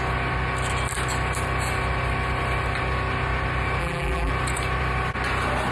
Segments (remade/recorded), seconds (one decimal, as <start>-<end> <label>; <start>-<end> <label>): 0.0-3.8 recorded; 3.8-4.3 remade; 4.3-5.7 recorded